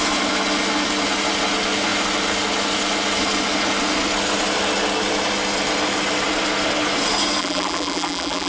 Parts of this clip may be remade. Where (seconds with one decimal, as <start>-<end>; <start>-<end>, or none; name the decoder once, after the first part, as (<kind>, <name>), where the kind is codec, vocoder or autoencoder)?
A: 7.4-8.5 (vocoder, BigVGAN v2)